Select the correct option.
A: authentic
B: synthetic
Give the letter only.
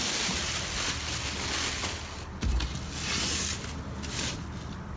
A